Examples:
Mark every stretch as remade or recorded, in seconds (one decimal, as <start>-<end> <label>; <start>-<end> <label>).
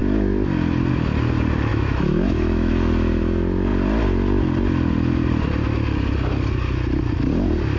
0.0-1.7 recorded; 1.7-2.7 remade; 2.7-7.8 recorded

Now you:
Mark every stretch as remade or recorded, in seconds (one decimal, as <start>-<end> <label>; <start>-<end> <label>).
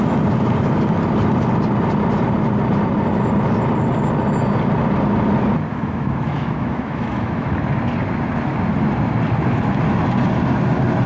0.0-5.7 recorded; 5.7-7.6 remade; 7.6-11.1 recorded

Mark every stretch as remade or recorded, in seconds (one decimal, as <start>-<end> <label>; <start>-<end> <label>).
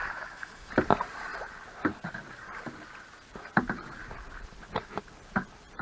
0.0-0.7 remade; 0.7-5.8 recorded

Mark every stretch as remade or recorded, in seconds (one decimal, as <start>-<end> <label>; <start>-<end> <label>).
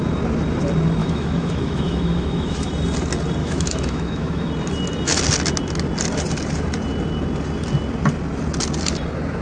0.0-1.0 recorded; 1.0-2.7 remade; 2.7-3.4 recorded; 3.4-4.5 remade; 4.5-9.4 recorded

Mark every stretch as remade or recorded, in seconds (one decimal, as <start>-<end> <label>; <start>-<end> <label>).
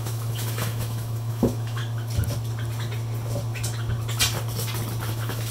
0.0-1.8 remade; 1.8-5.1 recorded; 5.1-5.5 remade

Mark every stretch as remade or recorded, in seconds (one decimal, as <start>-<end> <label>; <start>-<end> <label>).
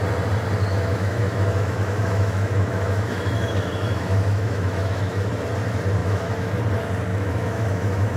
0.0-0.7 recorded; 0.7-5.3 remade; 5.3-6.0 recorded; 6.0-6.6 remade; 6.6-7.1 recorded; 7.1-8.2 remade